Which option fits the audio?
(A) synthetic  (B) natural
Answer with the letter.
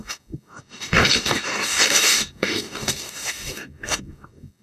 A